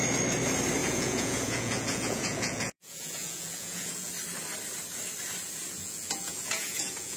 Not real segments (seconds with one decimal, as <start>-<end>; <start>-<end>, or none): 0.8-4.1; 5.8-7.2